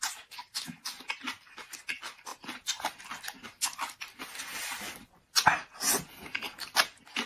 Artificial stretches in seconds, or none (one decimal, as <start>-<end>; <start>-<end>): none